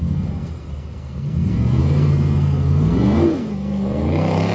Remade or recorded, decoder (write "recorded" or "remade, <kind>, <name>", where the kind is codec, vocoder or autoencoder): remade, codec, SNAC